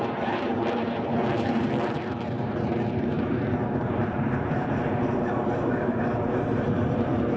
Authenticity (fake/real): fake